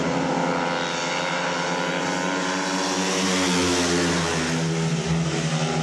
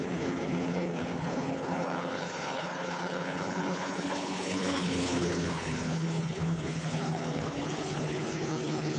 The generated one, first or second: second